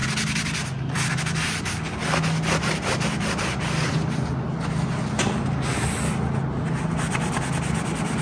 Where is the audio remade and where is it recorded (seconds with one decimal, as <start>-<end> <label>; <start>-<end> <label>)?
0.0-8.2 recorded